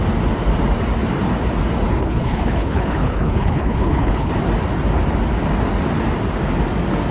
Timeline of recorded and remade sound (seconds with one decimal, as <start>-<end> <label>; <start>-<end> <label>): 0.0-2.0 recorded; 2.0-4.3 remade; 4.3-7.1 recorded

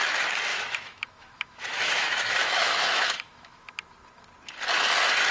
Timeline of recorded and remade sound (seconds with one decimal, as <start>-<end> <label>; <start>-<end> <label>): 0.0-0.5 recorded; 0.5-3.7 remade; 3.7-5.3 recorded